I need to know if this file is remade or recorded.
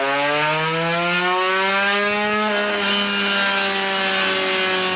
recorded